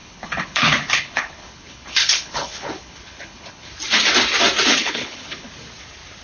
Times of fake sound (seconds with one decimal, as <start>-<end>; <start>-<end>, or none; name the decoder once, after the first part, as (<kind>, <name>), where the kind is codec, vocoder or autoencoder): 0.0-3.7 (codec, HILCodec); 4.7-5.5